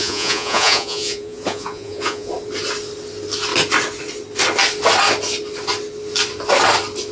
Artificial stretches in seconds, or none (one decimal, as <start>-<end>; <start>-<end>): 0.0-2.3